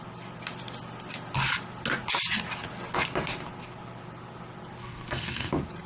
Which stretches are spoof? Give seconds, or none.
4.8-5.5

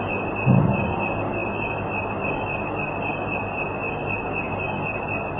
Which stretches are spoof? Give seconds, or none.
none

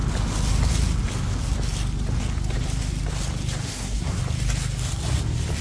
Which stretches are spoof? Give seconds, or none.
3.6-4.2

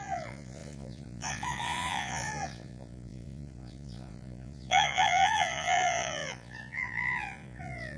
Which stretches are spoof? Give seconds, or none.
0.0-8.0

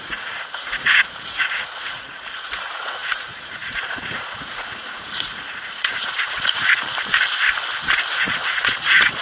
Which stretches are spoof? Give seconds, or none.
0.0-6.7; 8.2-9.2

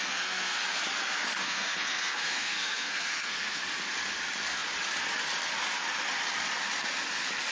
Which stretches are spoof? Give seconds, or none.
0.0-0.8; 1.4-3.6